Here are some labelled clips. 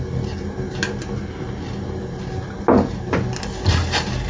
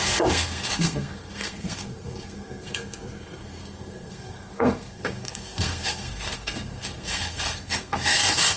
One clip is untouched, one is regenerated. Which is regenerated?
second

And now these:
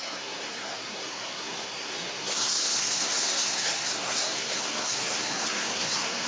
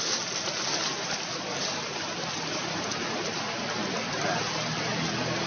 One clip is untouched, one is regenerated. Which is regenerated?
first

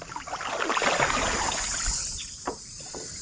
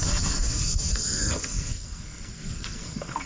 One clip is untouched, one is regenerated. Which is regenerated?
second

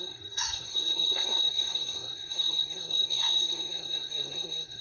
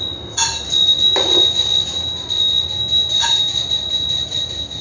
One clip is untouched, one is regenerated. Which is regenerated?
first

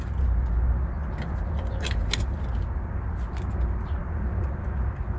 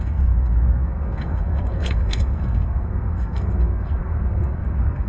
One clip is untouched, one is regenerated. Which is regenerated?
second